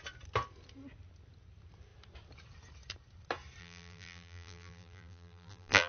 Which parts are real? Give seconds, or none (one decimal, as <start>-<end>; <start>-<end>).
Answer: 0.0-3.6